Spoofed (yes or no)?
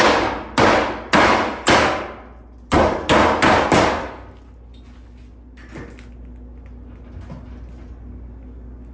no